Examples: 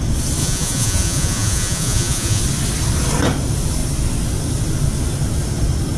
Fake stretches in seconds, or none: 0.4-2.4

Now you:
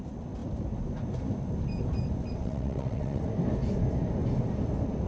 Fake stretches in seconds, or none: 2.4-3.2

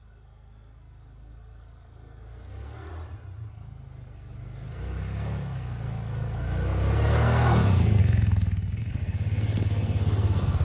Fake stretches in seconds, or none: 0.0-2.9; 3.5-10.6